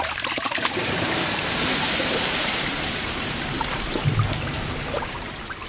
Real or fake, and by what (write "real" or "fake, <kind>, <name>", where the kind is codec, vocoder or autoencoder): fake, vocoder, BigVGAN v2